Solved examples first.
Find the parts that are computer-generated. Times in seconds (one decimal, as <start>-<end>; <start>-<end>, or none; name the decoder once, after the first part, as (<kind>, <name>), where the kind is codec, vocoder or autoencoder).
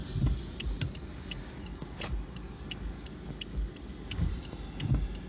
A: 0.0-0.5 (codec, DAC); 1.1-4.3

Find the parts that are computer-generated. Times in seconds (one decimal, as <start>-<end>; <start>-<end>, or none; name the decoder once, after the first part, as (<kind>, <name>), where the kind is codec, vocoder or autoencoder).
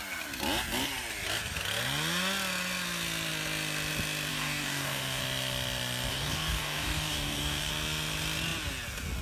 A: 4.3-5.2 (codec, DAC); 6.1-7.7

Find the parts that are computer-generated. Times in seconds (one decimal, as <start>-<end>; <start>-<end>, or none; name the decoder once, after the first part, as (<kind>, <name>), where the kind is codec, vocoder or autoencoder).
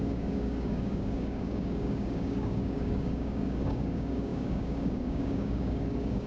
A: 0.0-6.3 (codec, DAC)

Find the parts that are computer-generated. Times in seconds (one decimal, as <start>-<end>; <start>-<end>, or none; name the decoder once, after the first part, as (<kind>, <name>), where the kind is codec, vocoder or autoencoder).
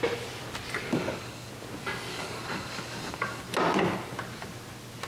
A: 0.9-1.5 (codec, DAC); 2.1-3.4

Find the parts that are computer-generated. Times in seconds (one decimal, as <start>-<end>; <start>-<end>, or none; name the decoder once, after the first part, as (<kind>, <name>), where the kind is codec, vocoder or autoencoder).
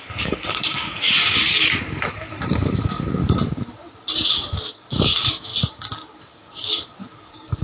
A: 0.0-3.2 (codec, DAC); 4.3-5.5; 6.2-7.6